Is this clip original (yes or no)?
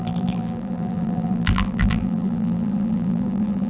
no